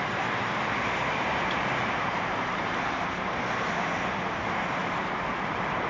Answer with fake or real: fake